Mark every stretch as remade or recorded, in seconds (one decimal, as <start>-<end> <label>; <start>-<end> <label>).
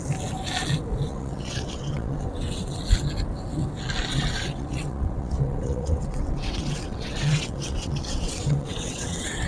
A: 0.0-1.1 recorded; 1.1-2.8 remade; 2.8-4.1 recorded; 4.1-9.5 remade